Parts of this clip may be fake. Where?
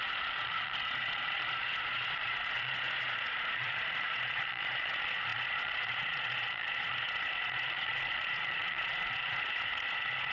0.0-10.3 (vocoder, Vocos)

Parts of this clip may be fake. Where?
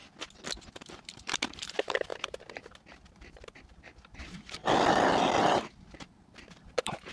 0.7-4.6 (vocoder, BigVGAN v2); 5.4-7.1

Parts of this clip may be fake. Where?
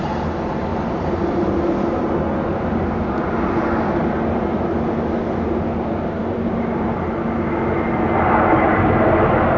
0.7-1.5 (vocoder, BigVGAN v2)